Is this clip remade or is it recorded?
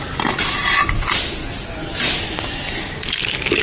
recorded